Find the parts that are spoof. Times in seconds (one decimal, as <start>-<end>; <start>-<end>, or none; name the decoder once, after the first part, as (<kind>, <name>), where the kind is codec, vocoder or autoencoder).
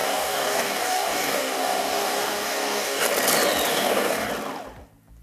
0.0-3.1 (codec, DAC); 3.7-4.3